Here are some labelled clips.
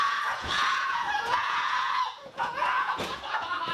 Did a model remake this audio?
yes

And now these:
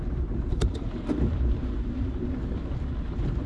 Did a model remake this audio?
yes